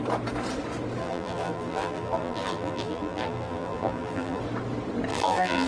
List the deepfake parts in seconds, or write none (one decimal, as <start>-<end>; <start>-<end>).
1.0-4.4; 5.1-5.7